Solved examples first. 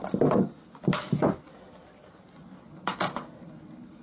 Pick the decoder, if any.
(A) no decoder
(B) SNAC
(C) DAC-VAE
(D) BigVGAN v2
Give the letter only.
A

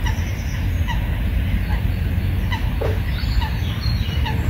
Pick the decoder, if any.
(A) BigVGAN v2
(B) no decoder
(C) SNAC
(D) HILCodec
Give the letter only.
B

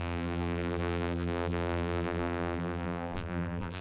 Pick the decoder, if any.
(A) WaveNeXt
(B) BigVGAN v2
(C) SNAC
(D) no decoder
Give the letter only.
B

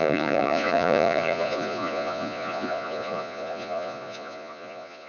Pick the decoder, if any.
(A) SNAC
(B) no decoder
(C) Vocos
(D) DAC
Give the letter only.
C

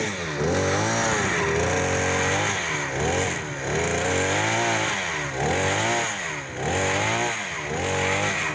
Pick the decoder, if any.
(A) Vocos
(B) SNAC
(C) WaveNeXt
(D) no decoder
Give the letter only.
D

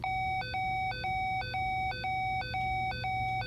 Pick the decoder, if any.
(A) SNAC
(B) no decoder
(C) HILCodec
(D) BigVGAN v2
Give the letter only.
B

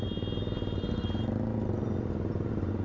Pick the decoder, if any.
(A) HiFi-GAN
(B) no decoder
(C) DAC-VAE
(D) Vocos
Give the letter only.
B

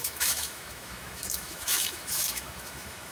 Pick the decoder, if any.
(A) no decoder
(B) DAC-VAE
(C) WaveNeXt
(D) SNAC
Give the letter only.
B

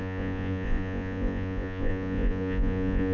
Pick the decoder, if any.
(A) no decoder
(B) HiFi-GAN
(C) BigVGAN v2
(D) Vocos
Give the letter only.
D